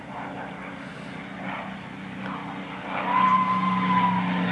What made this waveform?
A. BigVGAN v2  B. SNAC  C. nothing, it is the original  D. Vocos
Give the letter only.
C